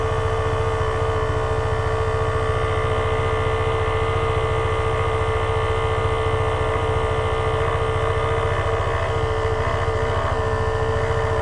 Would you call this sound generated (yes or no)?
no